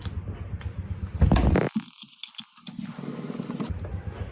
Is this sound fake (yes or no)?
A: no